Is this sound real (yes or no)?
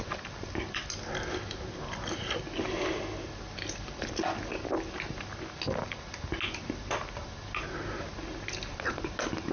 yes